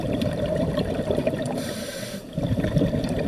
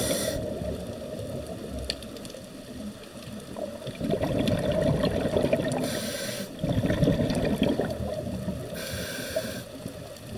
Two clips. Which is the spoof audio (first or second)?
first